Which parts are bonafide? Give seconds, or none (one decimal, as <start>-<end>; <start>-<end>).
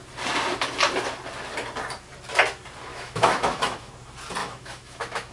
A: 0.0-2.9; 3.9-4.4